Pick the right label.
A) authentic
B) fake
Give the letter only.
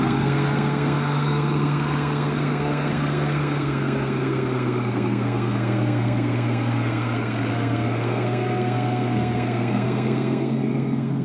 B